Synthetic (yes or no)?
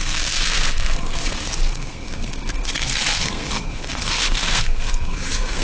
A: yes